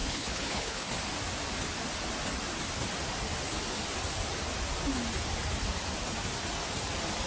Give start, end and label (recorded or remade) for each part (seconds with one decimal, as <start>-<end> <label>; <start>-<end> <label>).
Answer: 0.0-0.9 remade; 0.9-7.3 recorded